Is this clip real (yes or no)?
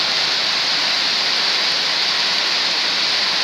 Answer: yes